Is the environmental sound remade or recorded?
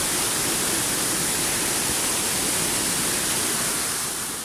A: recorded